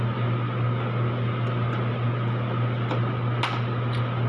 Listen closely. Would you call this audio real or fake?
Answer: real